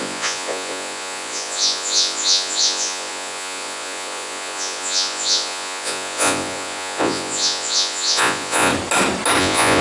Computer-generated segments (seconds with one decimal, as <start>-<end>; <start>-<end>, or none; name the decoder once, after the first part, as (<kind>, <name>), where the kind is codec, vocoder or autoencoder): 0.0-8.7 (vocoder, Vocos); 9.4-9.8